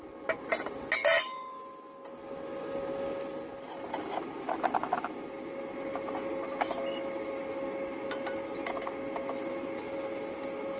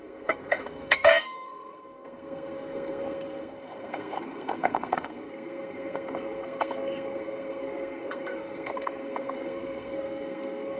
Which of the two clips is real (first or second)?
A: first